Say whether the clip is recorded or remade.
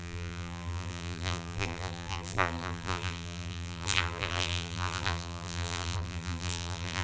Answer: remade